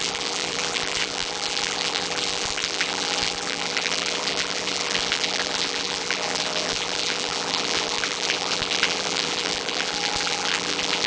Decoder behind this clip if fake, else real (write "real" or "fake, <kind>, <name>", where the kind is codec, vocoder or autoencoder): fake, vocoder, BigVGAN v2